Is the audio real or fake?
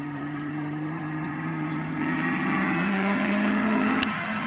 fake